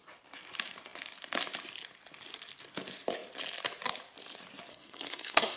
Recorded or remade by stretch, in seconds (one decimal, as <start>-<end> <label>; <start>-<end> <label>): 0.0-4.7 recorded; 4.7-5.6 remade